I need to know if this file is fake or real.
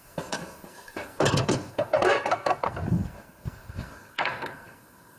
fake